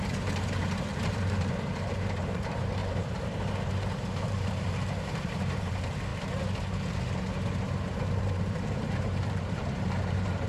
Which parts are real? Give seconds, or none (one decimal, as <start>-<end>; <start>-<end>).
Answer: 6.1-8.2